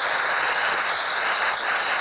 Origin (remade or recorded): recorded